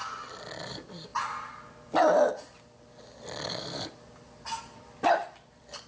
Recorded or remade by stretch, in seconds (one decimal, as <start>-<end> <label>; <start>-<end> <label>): 0.0-0.6 recorded; 0.6-1.1 remade; 1.1-4.6 recorded; 4.6-5.9 remade